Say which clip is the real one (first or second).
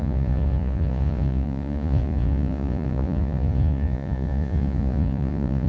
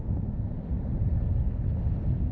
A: second